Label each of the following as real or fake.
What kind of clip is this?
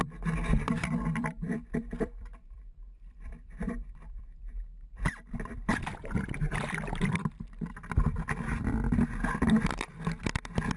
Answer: fake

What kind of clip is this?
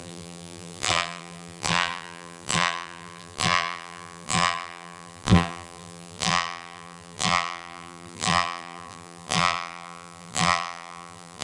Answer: fake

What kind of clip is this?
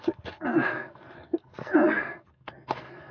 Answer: fake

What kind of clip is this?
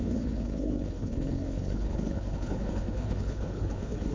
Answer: fake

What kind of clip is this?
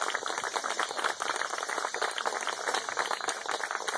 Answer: real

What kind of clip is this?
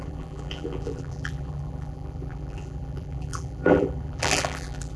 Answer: fake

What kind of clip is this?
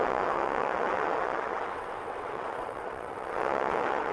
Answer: fake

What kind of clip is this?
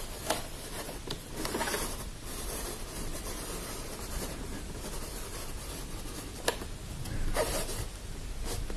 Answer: real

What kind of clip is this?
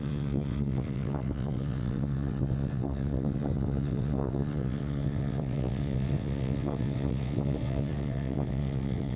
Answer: fake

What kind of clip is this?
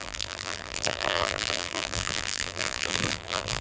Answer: fake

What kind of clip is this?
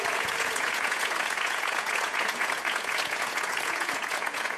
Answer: fake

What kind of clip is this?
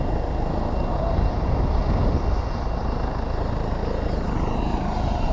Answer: real